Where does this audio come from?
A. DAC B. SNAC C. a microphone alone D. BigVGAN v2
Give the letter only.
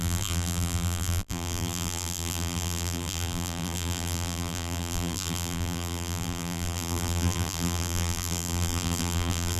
D